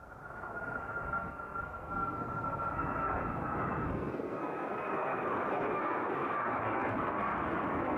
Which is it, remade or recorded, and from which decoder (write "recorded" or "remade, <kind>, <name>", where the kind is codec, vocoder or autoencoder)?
remade, codec, SNAC